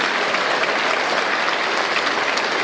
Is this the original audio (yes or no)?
yes